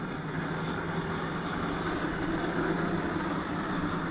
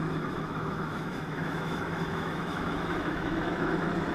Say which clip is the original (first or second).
first